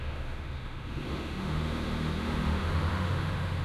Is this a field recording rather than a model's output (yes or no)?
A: no